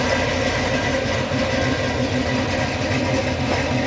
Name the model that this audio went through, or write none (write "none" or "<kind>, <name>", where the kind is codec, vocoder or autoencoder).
none